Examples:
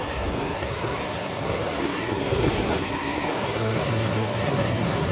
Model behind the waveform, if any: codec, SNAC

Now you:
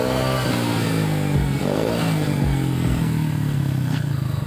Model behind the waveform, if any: codec, SNAC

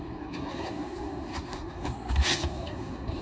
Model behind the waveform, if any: codec, SNAC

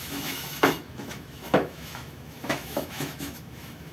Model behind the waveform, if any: autoencoder, DAC-VAE